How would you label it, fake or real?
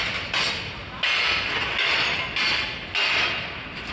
real